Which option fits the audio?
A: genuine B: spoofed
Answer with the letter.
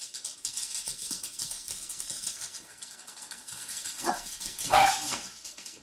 B